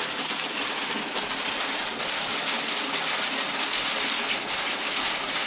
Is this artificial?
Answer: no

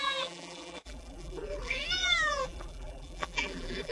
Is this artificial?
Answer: yes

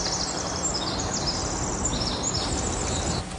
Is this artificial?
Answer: no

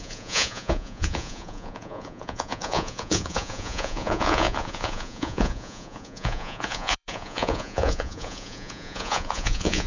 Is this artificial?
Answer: yes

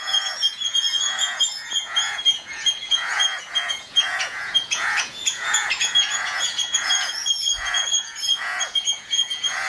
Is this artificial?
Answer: yes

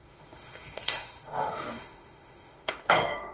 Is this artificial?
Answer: yes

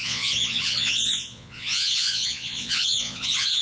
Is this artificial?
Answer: yes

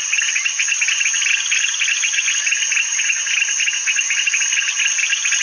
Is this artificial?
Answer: no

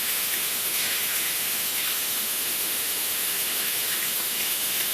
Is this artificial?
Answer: yes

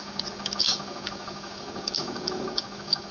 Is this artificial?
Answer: yes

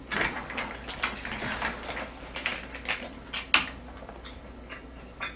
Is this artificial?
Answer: no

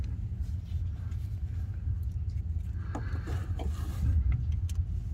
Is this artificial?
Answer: no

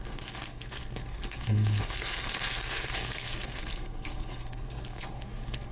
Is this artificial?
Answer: yes